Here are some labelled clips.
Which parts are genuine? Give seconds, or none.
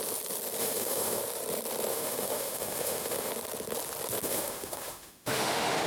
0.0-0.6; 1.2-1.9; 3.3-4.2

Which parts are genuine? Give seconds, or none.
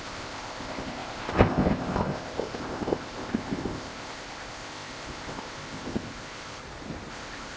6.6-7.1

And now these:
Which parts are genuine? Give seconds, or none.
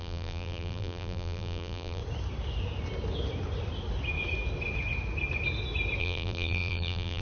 2.0-6.0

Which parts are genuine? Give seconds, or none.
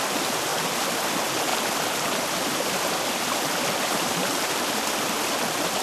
0.0-0.5; 1.0-1.5; 5.0-5.8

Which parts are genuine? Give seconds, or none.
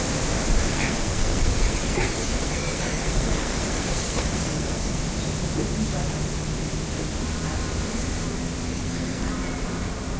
0.0-0.7; 5.0-8.7; 9.3-10.2